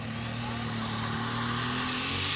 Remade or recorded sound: recorded